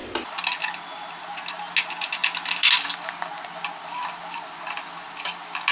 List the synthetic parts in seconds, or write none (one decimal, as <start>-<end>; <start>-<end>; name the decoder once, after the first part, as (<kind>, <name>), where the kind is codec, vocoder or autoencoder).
none